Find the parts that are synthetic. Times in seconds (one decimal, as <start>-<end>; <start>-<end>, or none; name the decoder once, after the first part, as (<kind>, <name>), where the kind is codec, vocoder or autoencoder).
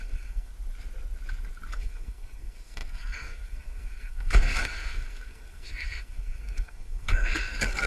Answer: 0.0-0.5 (codec, SNAC); 1.7-7.9